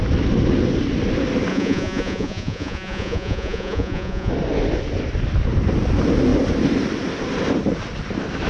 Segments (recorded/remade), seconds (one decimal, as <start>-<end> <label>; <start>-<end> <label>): 0.0-1.5 recorded; 1.5-4.3 remade; 4.3-8.5 recorded